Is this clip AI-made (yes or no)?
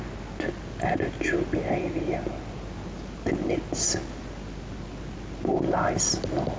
no